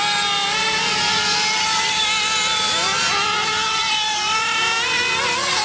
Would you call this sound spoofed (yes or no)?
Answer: no